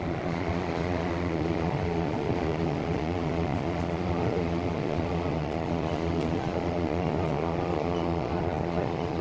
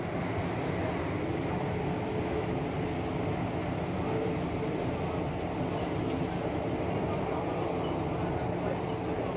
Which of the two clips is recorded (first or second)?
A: second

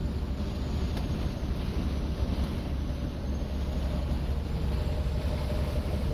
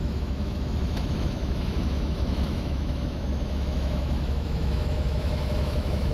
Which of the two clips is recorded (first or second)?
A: first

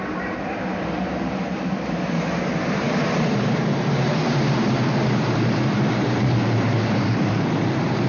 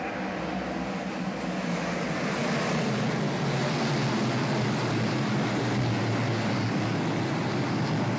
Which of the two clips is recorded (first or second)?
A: second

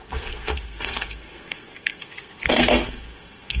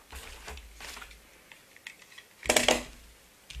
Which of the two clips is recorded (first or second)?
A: second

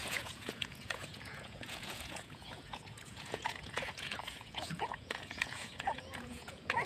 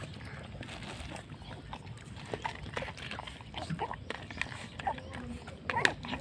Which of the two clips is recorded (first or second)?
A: second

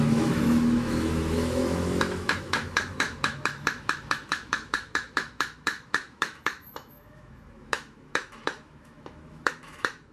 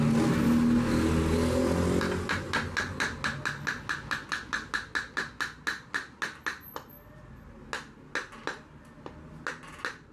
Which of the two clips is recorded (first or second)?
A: second